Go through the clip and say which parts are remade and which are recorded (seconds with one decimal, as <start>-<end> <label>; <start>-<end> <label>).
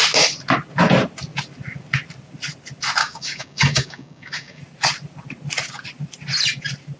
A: 0.0-3.0 recorded; 3.0-4.6 remade; 4.6-7.0 recorded